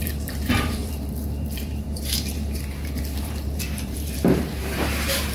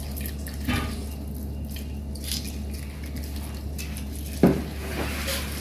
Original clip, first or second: second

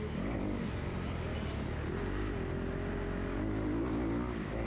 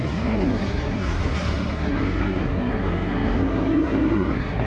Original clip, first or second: first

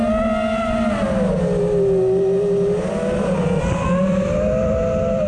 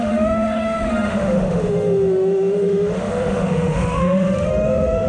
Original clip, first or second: first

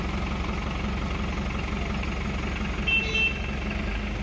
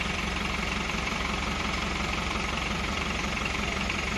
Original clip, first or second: first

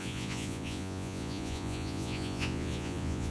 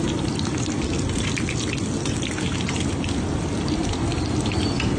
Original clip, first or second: second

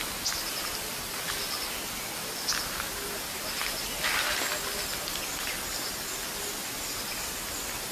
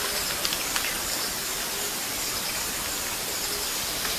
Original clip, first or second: first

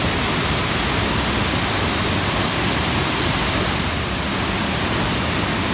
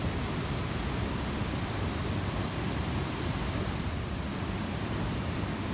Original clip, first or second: first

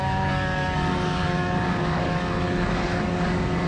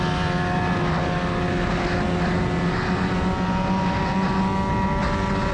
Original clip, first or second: second